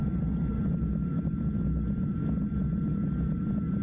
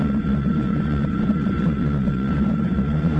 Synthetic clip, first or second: second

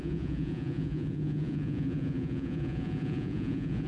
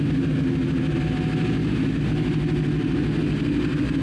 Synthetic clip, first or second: first